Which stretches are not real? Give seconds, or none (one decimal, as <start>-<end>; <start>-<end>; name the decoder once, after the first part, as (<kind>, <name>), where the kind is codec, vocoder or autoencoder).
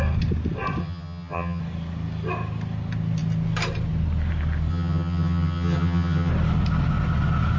0.8-1.6 (vocoder, HiFi-GAN); 4.7-6.3